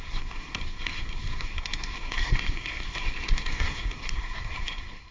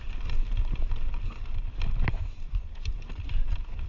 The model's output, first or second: first